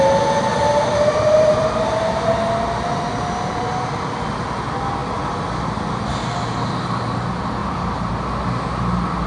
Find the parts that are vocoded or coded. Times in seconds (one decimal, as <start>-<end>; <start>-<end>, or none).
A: 0.5-1.6; 3.1-3.6; 7.6-8.1